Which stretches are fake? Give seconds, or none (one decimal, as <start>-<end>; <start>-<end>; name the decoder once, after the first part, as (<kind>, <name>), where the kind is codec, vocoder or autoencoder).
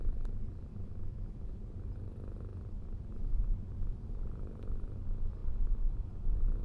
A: 0.7-1.4 (autoencoder, DAC-VAE)